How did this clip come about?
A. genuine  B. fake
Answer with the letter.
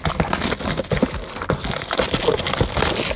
A